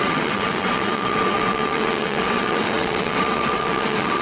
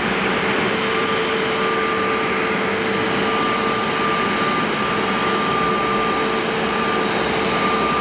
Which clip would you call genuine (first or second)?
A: second